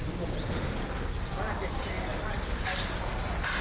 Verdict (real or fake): real